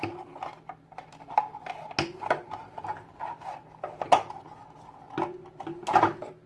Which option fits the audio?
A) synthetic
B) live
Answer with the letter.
B